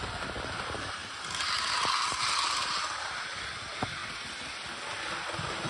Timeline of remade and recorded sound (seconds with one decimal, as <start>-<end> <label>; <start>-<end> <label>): 0.0-1.0 remade; 1.0-2.1 recorded; 2.1-4.0 remade; 4.0-4.8 recorded; 4.8-5.7 remade